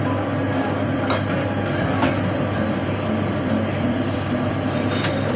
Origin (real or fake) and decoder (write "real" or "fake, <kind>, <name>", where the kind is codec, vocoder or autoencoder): fake, vocoder, BigVGAN v2